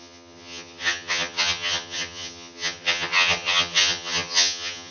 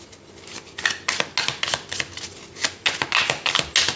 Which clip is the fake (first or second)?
first